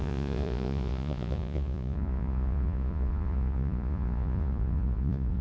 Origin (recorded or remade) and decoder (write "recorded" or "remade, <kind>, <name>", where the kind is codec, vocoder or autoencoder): remade, vocoder, Vocos